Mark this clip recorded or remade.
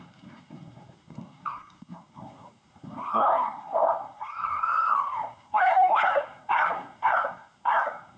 remade